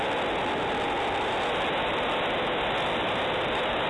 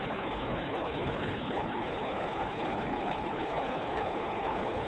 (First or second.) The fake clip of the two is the second